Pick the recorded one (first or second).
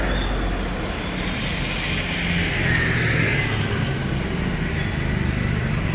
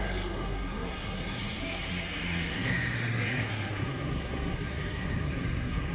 first